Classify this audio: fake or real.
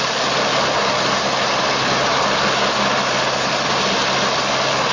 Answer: real